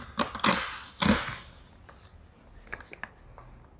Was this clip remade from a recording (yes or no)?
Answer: no